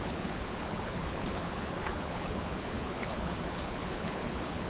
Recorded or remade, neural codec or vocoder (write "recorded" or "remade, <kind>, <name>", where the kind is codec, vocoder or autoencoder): remade, codec, HILCodec